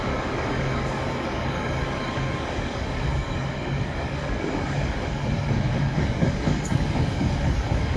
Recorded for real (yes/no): no